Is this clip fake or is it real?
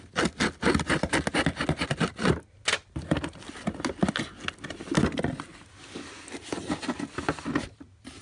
real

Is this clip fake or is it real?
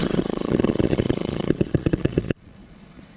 fake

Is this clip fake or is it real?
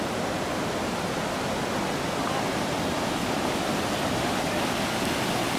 real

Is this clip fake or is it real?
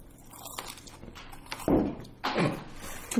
real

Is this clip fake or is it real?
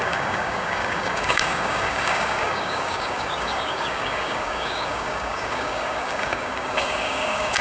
fake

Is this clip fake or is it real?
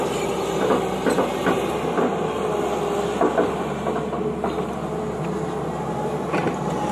real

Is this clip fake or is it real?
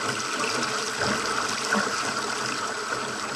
real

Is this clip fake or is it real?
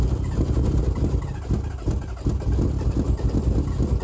real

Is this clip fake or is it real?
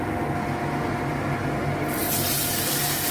real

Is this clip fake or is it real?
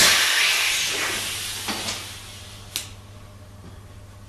real